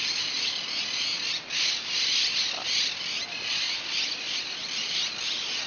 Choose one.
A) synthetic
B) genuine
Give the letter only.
B